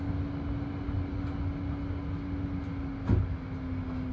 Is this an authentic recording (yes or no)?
yes